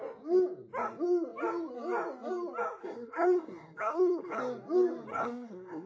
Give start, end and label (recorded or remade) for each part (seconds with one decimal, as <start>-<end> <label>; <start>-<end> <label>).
0.0-2.8 recorded; 2.8-4.4 remade; 4.4-5.1 recorded; 5.1-5.9 remade